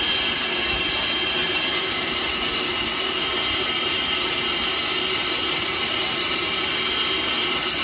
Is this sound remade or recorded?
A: recorded